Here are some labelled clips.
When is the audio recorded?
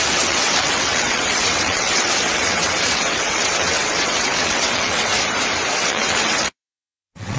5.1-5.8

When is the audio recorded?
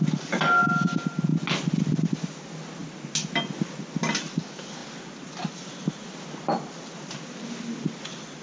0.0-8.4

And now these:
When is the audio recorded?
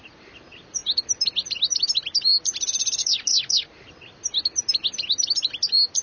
0.0-6.0